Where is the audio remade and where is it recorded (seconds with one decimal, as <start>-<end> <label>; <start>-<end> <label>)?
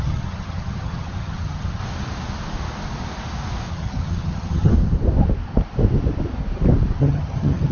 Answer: 0.0-1.8 remade; 1.8-3.7 recorded; 3.7-4.7 remade; 4.7-7.0 recorded; 7.0-7.7 remade